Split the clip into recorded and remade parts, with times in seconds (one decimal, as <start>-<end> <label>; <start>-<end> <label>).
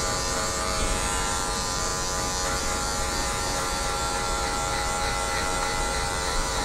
0.0-1.9 remade; 1.9-2.6 recorded; 2.6-6.6 remade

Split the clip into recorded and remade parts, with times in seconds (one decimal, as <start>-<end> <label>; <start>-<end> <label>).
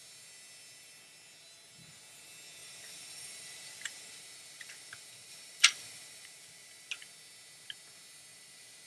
0.0-2.6 recorded; 2.6-6.9 remade; 6.9-8.3 recorded; 8.3-8.9 remade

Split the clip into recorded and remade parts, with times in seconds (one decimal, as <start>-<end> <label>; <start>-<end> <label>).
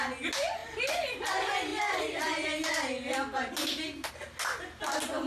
0.0-0.6 recorded; 0.6-1.1 remade; 1.1-5.3 recorded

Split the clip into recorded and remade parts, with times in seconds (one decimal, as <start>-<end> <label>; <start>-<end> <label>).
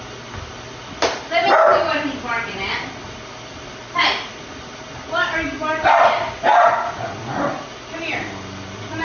0.0-6.5 recorded; 6.5-8.0 remade; 8.0-9.0 recorded